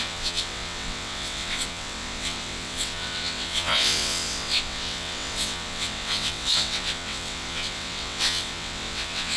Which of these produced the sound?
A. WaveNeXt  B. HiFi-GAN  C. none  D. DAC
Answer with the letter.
A